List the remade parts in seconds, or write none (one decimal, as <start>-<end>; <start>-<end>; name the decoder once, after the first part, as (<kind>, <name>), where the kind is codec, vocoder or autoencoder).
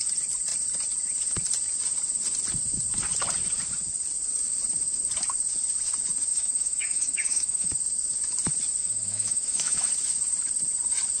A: 6.3-7.7 (autoencoder, DAC-VAE); 8.8-9.9